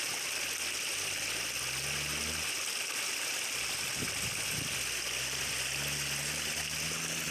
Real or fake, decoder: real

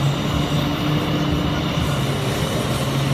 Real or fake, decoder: real